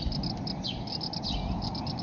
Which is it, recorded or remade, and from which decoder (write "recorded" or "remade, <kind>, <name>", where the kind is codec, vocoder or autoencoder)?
recorded